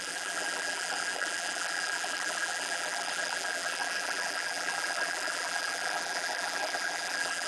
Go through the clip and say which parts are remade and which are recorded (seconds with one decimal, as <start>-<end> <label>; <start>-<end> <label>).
0.0-7.5 remade